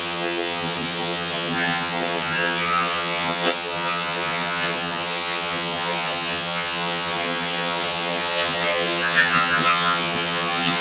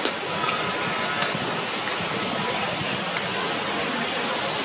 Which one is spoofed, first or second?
first